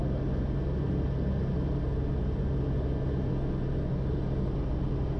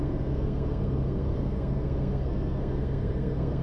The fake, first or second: second